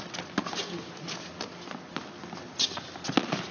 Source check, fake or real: real